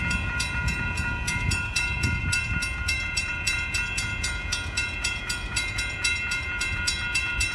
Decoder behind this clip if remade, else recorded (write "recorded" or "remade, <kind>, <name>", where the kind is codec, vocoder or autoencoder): remade, vocoder, Vocos